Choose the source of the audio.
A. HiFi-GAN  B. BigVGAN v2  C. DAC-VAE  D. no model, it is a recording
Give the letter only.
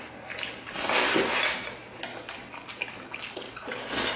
D